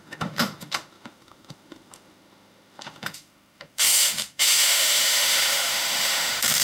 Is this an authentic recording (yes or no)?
no